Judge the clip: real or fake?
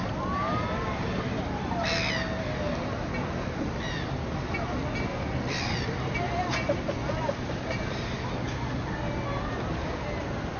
real